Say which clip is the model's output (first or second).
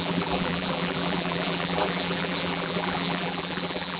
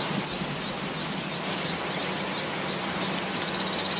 first